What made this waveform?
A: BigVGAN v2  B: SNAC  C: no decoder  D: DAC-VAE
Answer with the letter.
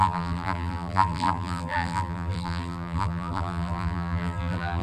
A